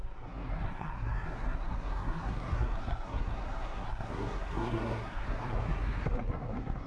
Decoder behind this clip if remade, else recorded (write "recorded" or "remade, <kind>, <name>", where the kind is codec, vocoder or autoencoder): remade, codec, SNAC